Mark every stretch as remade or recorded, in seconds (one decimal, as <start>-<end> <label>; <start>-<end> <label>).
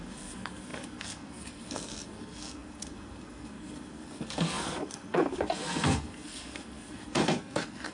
0.0-7.9 remade